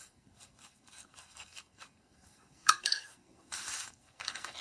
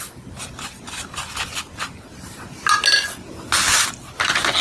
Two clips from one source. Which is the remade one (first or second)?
first